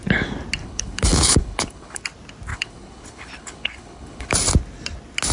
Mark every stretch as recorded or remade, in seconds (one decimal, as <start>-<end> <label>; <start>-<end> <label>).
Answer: 0.0-0.6 recorded; 0.6-2.0 remade; 2.0-2.5 recorded; 2.5-4.3 remade; 4.3-5.3 recorded